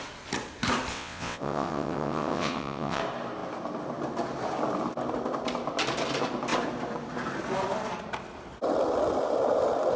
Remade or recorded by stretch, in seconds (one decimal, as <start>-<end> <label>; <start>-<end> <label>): 0.0-0.9 recorded; 0.9-3.0 remade; 3.0-10.0 recorded